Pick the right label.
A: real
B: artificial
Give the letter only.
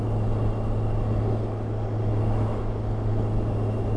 A